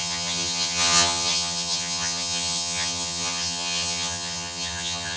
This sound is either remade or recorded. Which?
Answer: remade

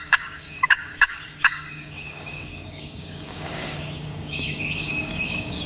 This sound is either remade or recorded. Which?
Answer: remade